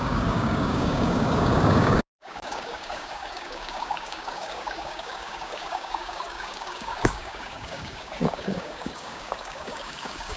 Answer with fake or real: fake